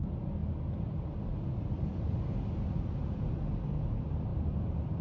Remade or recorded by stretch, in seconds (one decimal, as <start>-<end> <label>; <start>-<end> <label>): 0.0-1.9 recorded; 1.9-3.0 remade; 3.0-5.0 recorded